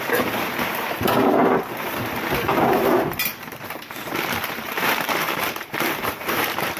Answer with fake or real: fake